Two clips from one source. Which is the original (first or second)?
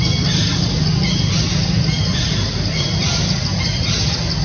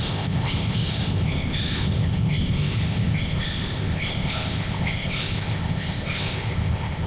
first